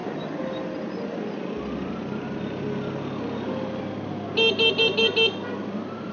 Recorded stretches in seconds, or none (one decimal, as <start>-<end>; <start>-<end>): 0.0-6.1